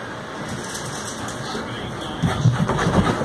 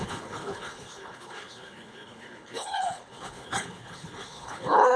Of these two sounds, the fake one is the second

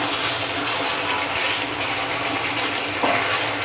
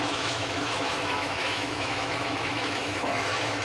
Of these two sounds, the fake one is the second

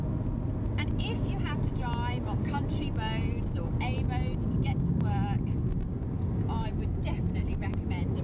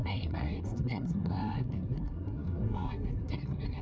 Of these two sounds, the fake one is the second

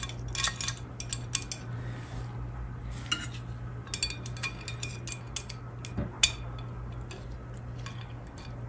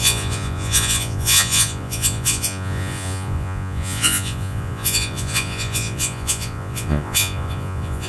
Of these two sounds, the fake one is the second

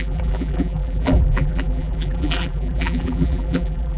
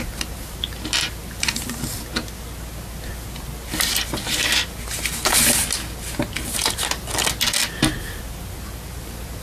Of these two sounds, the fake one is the first